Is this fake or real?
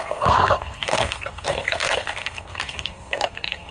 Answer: fake